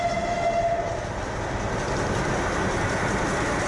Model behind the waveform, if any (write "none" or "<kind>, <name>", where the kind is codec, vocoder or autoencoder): none